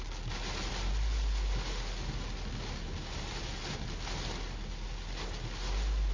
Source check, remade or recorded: recorded